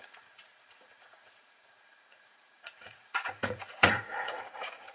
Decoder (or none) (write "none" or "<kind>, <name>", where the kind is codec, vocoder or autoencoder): vocoder, Vocos